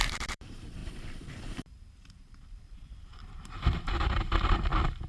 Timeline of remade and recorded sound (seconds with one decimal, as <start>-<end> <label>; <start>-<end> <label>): 0.0-5.1 remade